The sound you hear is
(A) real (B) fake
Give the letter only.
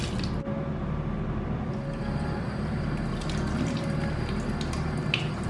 A